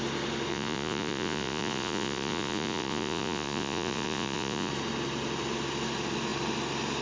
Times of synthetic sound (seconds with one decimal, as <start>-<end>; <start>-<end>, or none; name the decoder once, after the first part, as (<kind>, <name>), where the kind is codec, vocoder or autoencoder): 0.5-4.7 (vocoder, Vocos)